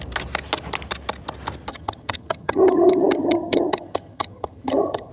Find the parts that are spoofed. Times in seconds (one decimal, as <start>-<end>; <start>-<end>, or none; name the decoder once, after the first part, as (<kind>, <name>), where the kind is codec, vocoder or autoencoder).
1.7-5.1 (vocoder, HiFi-GAN)